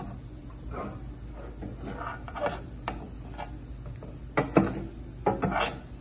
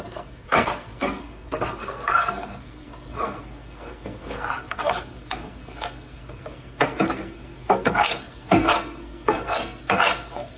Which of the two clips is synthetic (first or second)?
second